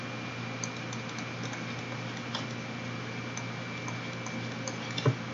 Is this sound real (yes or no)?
yes